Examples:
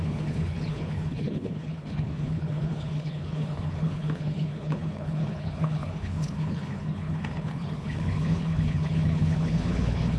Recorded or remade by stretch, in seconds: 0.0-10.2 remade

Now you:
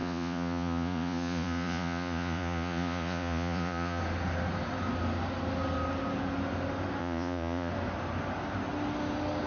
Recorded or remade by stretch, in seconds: 0.0-4.0 remade; 4.0-7.0 recorded; 7.0-7.7 remade; 7.7-9.5 recorded

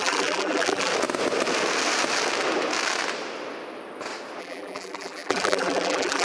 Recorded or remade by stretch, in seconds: 0.0-0.9 remade; 0.9-4.4 recorded; 4.4-6.2 remade